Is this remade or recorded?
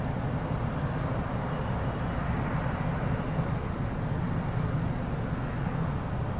recorded